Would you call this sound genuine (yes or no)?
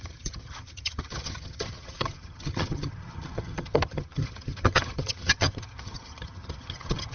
no